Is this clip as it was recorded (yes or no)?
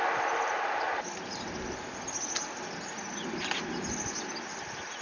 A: yes